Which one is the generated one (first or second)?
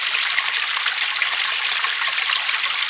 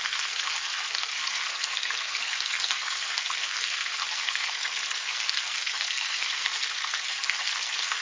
second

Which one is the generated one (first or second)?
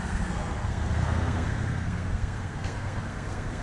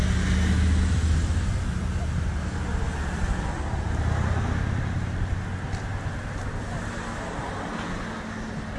first